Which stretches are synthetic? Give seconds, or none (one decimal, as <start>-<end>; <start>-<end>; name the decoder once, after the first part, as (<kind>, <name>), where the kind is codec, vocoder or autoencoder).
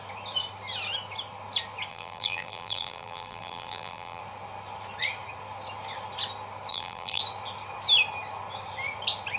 1.9-4.2 (vocoder, BigVGAN v2); 6.7-7.2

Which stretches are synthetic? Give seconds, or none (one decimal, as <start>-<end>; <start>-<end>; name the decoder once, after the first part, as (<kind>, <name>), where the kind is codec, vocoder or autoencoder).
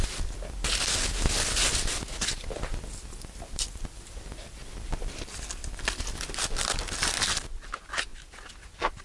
none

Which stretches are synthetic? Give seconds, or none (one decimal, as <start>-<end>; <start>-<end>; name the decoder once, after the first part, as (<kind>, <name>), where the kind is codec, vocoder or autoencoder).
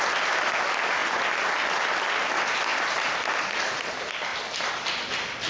2.7-3.4 (vocoder, BigVGAN v2); 4.3-5.1